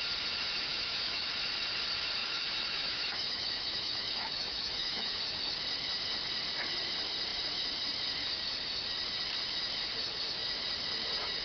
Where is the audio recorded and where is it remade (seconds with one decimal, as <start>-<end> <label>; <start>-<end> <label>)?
0.0-0.7 recorded; 0.7-1.3 remade; 1.3-2.2 recorded; 2.2-5.2 remade; 5.2-11.4 recorded